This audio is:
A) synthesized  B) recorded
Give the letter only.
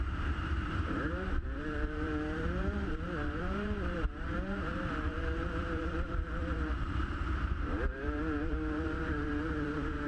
A